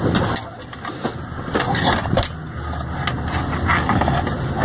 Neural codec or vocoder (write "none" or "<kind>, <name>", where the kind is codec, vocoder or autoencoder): none